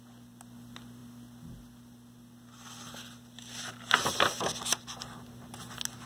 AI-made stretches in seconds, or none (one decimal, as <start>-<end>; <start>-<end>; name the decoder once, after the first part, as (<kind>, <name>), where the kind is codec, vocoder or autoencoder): none